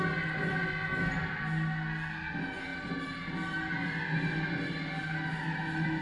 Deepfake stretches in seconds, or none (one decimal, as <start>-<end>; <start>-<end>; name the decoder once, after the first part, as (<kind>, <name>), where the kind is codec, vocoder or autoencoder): none